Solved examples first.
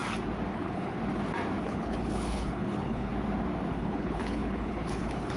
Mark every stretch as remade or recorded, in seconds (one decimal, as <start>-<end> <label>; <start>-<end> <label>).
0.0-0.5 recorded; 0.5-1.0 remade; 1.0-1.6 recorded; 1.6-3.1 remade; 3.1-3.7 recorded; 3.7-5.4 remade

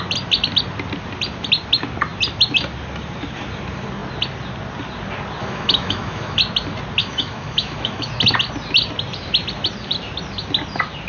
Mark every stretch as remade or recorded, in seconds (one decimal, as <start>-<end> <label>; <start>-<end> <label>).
0.0-5.4 recorded; 5.4-6.4 remade; 6.4-7.0 recorded; 7.0-8.1 remade; 8.1-11.1 recorded

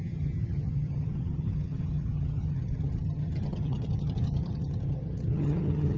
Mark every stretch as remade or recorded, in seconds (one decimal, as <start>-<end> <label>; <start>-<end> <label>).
0.0-6.0 remade

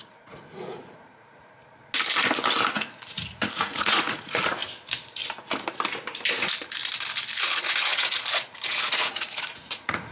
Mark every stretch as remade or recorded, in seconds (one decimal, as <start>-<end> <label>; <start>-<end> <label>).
0.0-1.6 remade; 1.6-2.7 recorded; 2.7-4.6 remade; 4.6-7.5 recorded; 7.5-10.1 remade

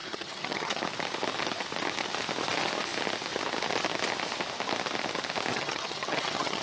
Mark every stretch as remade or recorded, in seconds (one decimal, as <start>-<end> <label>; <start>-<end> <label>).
0.0-0.8 remade; 0.8-5.5 recorded; 5.5-6.6 remade

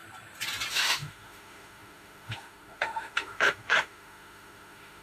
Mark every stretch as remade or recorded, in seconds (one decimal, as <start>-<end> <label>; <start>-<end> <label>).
0.0-0.7 recorded; 0.7-5.0 remade

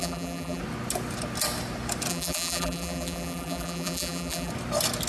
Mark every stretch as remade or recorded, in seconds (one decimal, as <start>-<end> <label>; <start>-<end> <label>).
0.0-0.6 remade; 0.6-2.1 recorded; 2.1-4.5 remade; 4.5-5.1 recorded

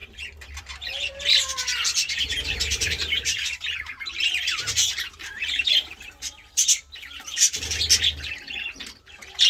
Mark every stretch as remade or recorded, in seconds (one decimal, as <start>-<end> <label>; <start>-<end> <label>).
0.0-2.3 recorded; 2.3-6.8 remade; 6.8-9.5 recorded